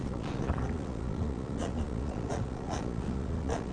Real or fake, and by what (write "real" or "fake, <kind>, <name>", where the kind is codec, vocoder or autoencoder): fake, vocoder, Vocos